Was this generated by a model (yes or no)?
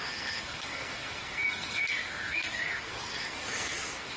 yes